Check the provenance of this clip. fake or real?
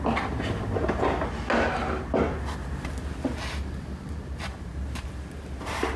real